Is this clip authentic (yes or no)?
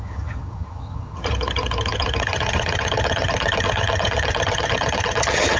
no